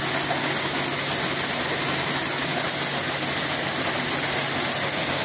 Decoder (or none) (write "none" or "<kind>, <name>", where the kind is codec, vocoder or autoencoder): none